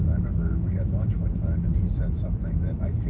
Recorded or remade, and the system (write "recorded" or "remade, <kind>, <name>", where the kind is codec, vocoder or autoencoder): remade, autoencoder, DAC-VAE